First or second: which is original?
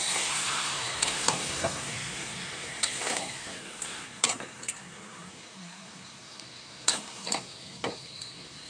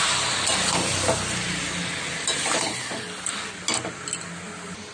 second